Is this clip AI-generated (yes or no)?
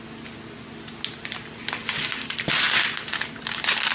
no